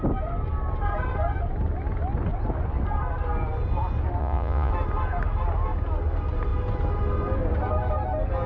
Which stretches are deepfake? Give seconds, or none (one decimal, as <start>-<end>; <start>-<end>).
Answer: 4.2-4.7